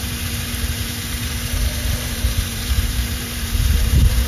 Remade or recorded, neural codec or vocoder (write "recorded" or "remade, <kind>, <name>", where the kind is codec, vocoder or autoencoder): remade, vocoder, BigVGAN v2